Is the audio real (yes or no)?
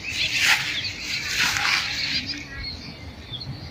yes